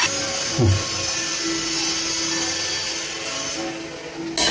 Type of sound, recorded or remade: recorded